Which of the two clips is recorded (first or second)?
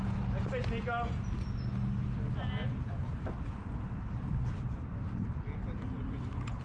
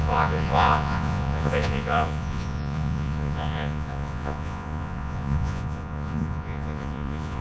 first